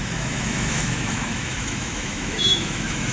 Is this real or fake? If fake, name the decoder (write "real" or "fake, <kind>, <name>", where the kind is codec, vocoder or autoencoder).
fake, autoencoder, DAC-VAE